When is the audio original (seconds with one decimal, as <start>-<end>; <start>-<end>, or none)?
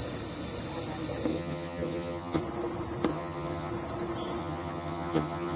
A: 0.0-1.3; 2.4-3.1; 3.7-4.4